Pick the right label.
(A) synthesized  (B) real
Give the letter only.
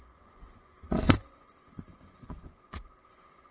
A